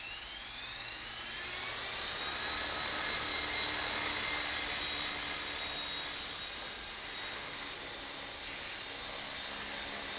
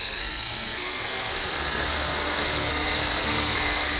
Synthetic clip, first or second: second